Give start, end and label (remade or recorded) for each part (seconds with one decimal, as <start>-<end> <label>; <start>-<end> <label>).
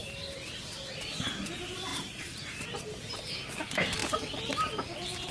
0.0-1.5 remade; 1.5-1.9 recorded; 1.9-3.1 remade; 3.1-4.0 recorded; 4.0-5.3 remade